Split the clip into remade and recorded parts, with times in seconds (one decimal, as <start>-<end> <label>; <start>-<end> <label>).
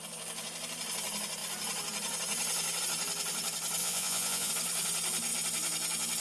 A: 0.0-3.8 recorded; 3.8-4.5 remade; 4.5-6.2 recorded